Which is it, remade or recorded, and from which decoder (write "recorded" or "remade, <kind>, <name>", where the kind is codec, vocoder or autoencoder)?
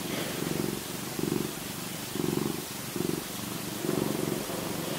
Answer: recorded